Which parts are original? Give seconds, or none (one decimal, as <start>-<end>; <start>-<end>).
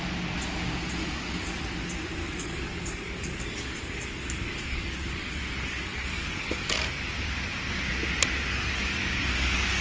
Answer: 0.0-1.0; 1.6-2.2; 6.9-8.5